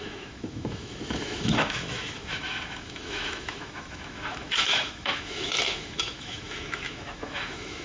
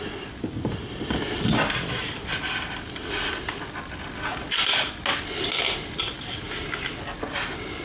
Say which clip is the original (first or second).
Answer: second